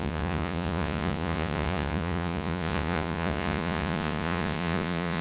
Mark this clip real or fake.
fake